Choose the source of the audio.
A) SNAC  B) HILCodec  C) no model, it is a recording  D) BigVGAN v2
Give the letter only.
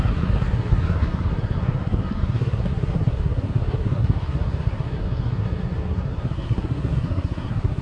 A